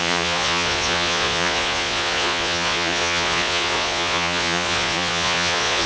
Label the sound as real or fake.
fake